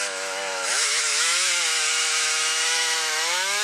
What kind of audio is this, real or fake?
fake